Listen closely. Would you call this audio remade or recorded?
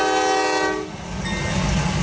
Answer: recorded